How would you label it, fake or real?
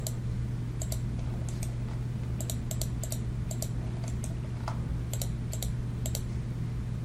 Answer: real